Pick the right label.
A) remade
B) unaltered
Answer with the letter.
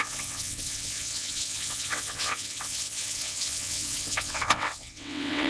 A